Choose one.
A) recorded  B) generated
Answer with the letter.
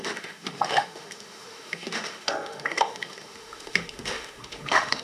B